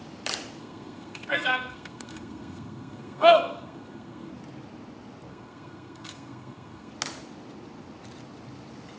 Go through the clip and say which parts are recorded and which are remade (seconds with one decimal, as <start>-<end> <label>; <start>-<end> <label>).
0.0-0.6 recorded; 0.6-4.3 remade; 4.3-5.3 recorded; 5.3-6.9 remade; 6.9-9.0 recorded